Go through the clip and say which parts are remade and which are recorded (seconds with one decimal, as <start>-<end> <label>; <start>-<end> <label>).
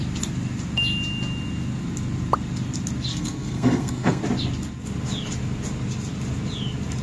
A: 0.0-3.1 recorded; 3.1-4.2 remade; 4.2-7.0 recorded